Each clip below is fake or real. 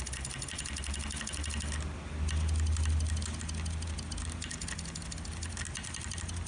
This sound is real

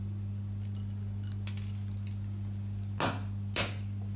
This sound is real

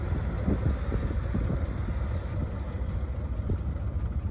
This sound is real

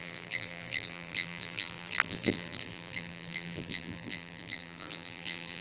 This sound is fake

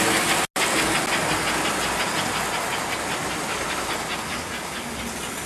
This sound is real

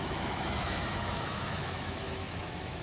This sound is fake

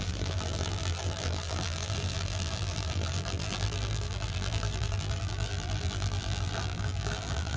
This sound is fake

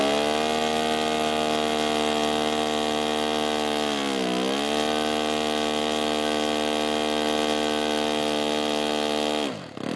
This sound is real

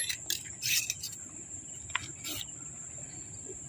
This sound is real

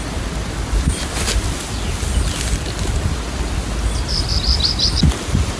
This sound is real